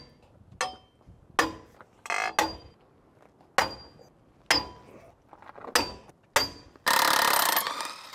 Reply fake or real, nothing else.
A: real